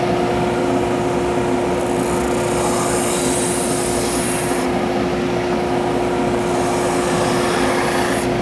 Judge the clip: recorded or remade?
recorded